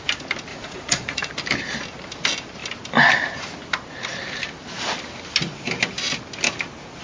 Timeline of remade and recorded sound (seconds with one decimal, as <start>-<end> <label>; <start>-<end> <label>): 0.0-0.5 recorded; 0.5-1.3 remade; 1.3-7.0 recorded